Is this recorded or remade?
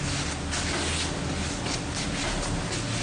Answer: recorded